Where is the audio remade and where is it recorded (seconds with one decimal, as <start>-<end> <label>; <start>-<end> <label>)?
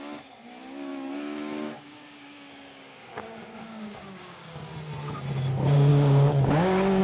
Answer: 0.0-0.9 recorded; 0.9-4.7 remade; 4.7-5.9 recorded; 5.9-7.0 remade